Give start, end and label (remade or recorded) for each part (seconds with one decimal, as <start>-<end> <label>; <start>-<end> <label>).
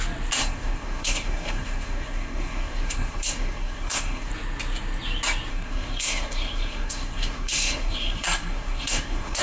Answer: 0.0-0.4 recorded; 0.4-4.3 remade; 4.3-5.5 recorded; 5.5-9.4 remade